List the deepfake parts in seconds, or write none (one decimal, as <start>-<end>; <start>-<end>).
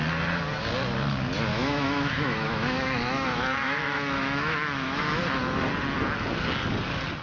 1.5-5.2